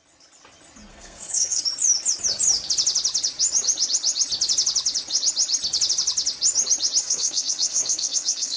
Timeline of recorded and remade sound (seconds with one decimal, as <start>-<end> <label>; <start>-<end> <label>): 0.0-0.9 recorded; 0.9-1.6 remade; 1.6-7.0 recorded; 7.0-8.6 remade